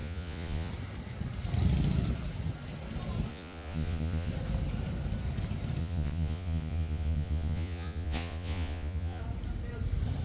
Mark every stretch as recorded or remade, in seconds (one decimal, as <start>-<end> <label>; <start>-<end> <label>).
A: 0.0-0.7 remade; 0.7-3.3 recorded; 3.3-4.3 remade; 4.3-5.8 recorded; 5.8-9.2 remade; 9.2-10.2 recorded